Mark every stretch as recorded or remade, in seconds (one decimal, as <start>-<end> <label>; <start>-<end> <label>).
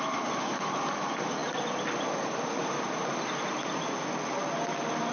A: 0.0-5.1 recorded